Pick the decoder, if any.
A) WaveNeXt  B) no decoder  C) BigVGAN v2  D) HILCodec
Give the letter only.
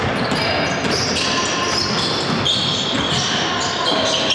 B